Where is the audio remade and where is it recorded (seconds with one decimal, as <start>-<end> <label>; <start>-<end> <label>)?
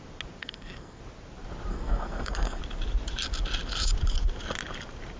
0.0-0.4 recorded; 0.4-1.0 remade; 1.0-1.7 recorded; 1.7-2.6 remade; 2.6-5.2 recorded